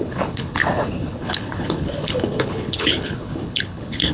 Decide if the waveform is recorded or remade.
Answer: remade